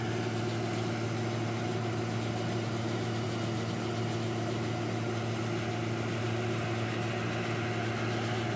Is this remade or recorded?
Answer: recorded